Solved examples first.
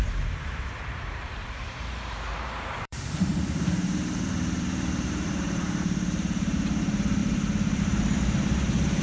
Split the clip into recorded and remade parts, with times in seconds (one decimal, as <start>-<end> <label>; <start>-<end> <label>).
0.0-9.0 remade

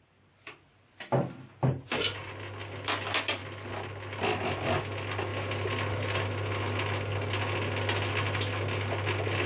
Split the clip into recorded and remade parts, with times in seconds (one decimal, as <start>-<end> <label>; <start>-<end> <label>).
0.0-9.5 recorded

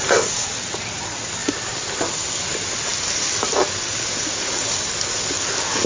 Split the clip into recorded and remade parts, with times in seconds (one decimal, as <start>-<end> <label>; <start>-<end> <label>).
0.0-1.4 recorded; 1.4-2.3 remade; 2.3-2.9 recorded; 2.9-3.5 remade; 3.5-5.9 recorded